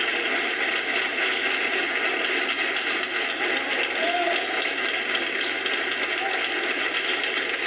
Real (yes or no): yes